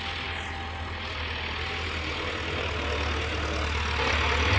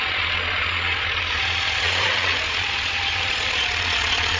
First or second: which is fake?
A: second